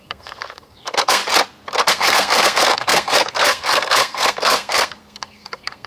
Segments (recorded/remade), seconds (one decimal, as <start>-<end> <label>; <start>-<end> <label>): 0.0-1.2 remade; 1.2-1.9 recorded; 1.9-5.9 remade